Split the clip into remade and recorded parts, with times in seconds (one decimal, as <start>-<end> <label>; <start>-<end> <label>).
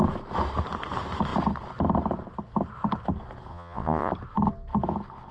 0.0-3.5 recorded; 3.5-4.1 remade; 4.1-5.3 recorded